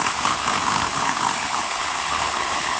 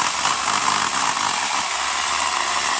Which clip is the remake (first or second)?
first